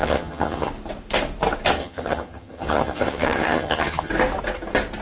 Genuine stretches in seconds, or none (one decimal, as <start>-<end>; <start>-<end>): 0.7-1.8; 4.1-5.0